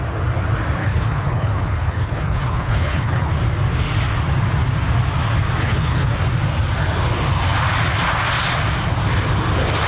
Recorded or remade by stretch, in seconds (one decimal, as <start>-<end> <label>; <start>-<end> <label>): 0.0-0.8 recorded; 0.8-3.3 remade; 3.3-5.6 recorded; 5.6-6.1 remade; 6.1-9.9 recorded